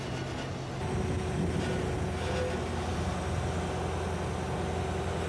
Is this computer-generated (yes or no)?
no